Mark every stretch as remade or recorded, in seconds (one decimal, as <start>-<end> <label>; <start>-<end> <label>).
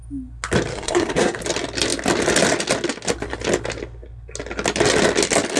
0.0-0.7 recorded; 0.7-1.4 remade; 1.4-5.6 recorded